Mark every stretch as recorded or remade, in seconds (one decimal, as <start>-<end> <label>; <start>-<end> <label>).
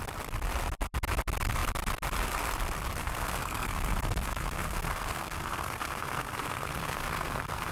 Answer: 0.0-3.0 recorded; 3.0-7.7 remade